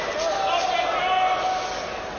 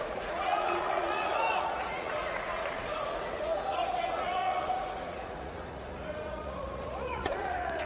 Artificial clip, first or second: second